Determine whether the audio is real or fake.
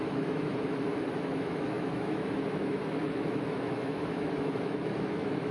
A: fake